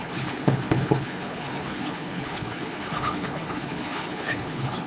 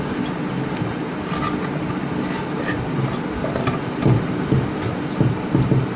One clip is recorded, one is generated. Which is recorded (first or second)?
second